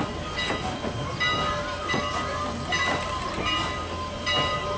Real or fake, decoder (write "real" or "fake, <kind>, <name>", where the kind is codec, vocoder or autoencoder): real